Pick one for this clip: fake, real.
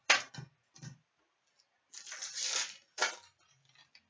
real